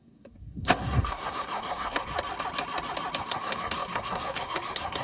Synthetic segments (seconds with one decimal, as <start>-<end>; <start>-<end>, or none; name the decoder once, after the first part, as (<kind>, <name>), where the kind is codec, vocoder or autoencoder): 0.0-2.1 (codec, SNAC); 3.2-5.0